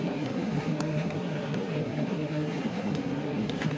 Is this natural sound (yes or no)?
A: no